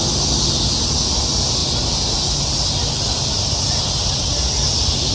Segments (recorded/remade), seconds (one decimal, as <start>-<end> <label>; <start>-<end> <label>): 0.0-5.1 recorded